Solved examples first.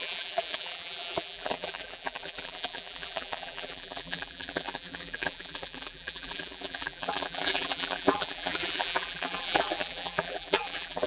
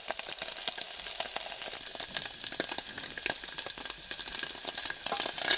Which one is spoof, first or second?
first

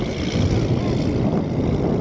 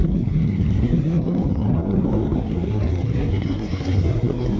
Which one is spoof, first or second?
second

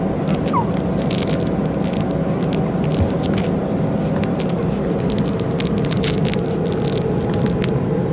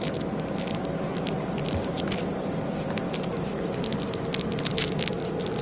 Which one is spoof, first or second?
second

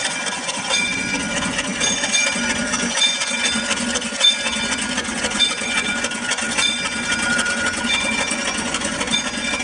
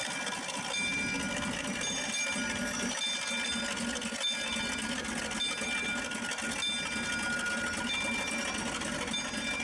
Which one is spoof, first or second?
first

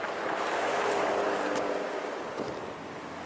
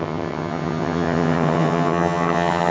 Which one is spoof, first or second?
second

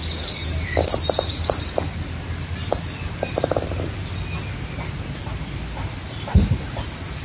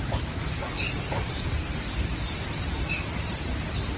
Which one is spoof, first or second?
second